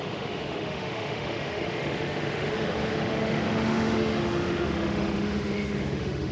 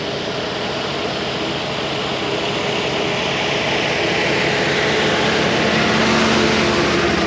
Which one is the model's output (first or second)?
first